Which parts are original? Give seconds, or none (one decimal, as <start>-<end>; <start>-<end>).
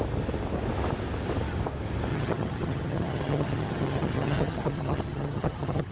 0.0-2.1